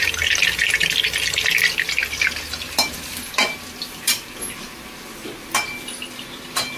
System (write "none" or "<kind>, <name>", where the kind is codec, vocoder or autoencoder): none